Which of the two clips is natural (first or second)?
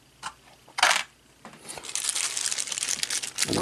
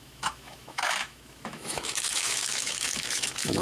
first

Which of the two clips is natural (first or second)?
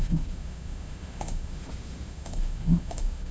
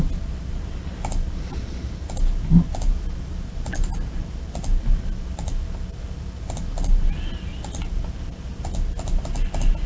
second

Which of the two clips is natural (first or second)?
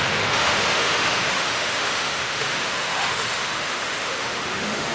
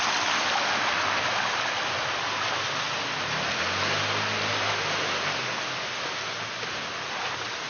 second